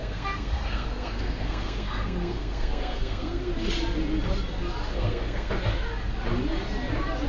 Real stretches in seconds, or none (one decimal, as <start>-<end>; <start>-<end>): 3.5-4.9; 5.5-7.3